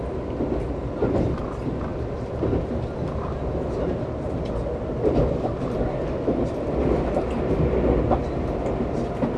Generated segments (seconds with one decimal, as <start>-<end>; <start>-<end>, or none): none